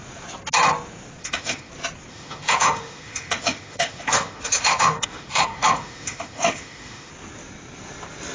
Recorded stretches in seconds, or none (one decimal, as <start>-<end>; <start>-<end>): 0.0-1.2; 1.7-2.1; 7.1-8.3